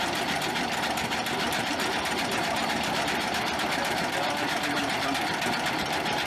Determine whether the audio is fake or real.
fake